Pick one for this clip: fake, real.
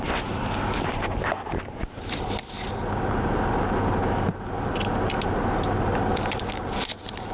real